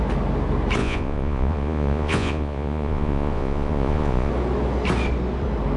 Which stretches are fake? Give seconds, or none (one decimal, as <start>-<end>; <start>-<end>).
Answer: 0.8-4.3